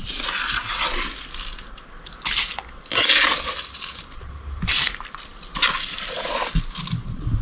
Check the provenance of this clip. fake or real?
real